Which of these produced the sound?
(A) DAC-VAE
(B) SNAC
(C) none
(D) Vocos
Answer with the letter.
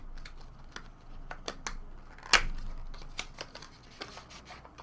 C